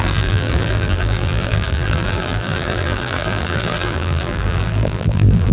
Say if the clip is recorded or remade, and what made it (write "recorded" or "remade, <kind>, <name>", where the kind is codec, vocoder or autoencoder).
remade, vocoder, BigVGAN v2